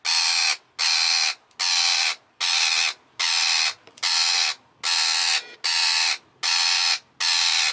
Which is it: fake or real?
real